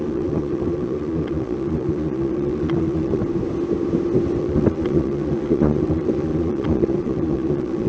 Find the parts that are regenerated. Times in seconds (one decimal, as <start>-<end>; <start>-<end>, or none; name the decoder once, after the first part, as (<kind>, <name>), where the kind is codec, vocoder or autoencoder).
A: 0.0-3.2 (vocoder, Vocos); 4.4-7.9

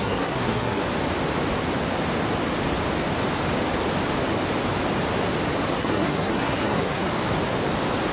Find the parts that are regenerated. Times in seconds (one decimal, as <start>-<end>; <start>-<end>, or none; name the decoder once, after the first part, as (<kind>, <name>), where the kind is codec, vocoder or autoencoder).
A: 0.0-0.8 (codec, SNAC); 5.7-7.1